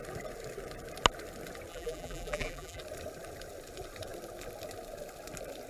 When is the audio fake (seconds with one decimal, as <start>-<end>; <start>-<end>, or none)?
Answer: 1.7-2.8